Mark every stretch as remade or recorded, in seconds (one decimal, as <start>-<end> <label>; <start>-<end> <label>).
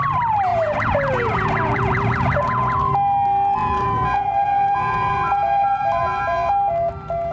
0.0-0.5 recorded; 0.5-2.9 remade; 2.9-3.6 recorded; 3.6-6.5 remade; 6.5-7.3 recorded